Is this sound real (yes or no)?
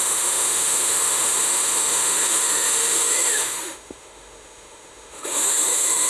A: no